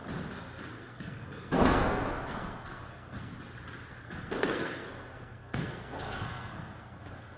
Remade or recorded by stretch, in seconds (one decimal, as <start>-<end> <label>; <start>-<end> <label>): 0.0-0.7 recorded; 0.7-3.3 remade; 3.3-3.9 recorded; 3.9-7.4 remade